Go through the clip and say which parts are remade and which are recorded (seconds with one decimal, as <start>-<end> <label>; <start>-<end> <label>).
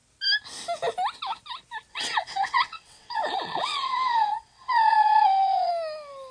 0.0-1.9 recorded; 1.9-5.7 remade; 5.7-6.3 recorded